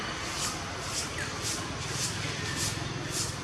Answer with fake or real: real